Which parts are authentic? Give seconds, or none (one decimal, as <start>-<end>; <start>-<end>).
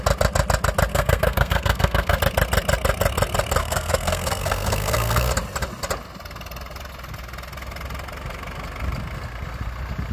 0.0-0.9; 2.2-3.6; 5.3-10.1